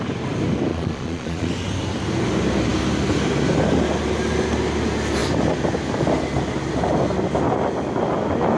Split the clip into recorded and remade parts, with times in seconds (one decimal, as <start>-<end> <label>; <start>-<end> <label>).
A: 0.0-0.7 recorded; 0.7-1.5 remade; 1.5-8.6 recorded